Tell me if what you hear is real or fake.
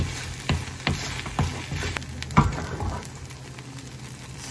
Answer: real